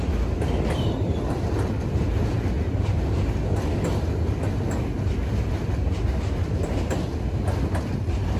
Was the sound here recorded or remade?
recorded